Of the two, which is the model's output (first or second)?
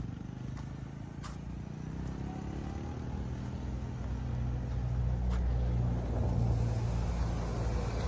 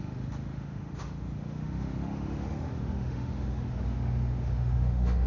second